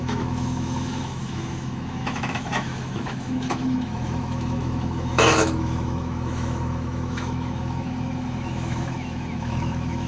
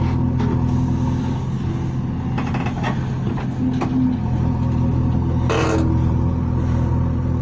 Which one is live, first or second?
second